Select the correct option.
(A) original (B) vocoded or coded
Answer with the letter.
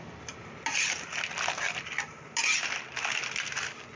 A